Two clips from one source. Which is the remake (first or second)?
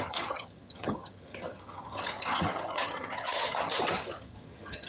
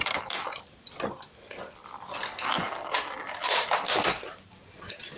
first